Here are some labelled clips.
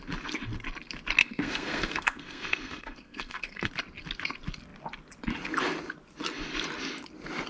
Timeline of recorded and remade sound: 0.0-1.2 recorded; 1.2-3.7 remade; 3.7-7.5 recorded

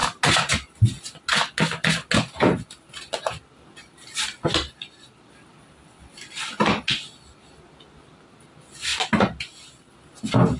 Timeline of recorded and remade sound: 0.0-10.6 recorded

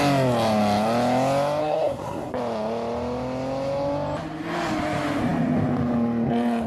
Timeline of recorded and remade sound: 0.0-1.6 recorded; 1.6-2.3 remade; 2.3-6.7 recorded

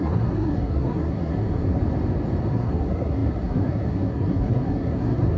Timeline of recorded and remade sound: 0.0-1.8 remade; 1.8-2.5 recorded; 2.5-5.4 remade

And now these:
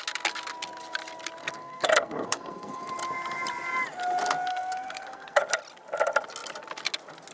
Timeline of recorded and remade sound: 0.0-1.4 recorded; 1.4-2.9 remade; 2.9-4.5 recorded; 4.5-5.4 remade; 5.4-7.3 recorded

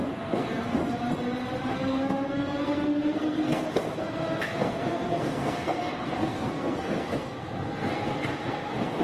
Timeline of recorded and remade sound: 0.0-0.8 remade; 0.8-1.7 recorded; 1.7-9.0 remade

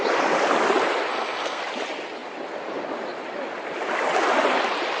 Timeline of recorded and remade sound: 0.0-1.1 recorded; 1.1-1.6 remade; 1.6-5.0 recorded